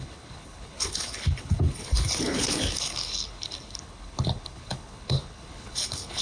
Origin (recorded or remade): remade